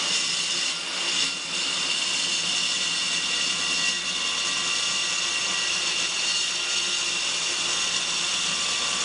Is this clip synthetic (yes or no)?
no